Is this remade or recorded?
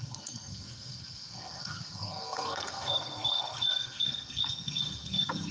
remade